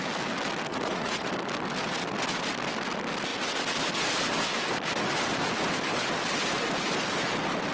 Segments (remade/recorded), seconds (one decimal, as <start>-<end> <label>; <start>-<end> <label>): 0.0-0.7 recorded; 0.7-1.3 remade; 1.3-7.7 recorded